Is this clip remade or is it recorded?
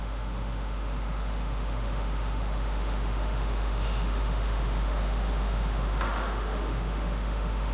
remade